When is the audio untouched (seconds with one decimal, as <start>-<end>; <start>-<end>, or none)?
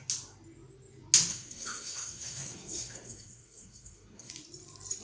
0.0-1.3; 4.3-5.0